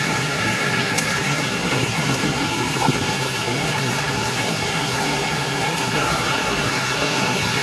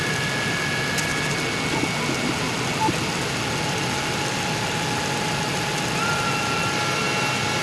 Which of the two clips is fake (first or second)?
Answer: first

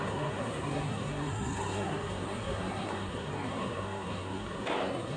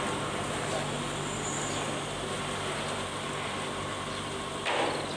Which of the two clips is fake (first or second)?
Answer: first